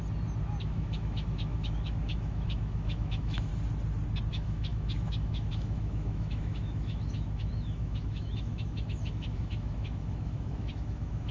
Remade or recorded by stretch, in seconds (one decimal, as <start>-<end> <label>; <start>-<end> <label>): 0.0-0.6 recorded; 0.6-3.5 remade; 3.5-4.3 recorded; 4.3-11.3 remade